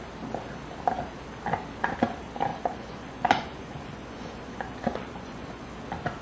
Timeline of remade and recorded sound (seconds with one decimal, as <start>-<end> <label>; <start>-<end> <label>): 0.0-2.5 recorded; 2.5-5.7 remade; 5.7-6.2 recorded